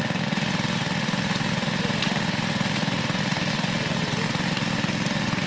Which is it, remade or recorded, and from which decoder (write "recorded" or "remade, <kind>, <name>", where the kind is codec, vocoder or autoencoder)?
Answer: recorded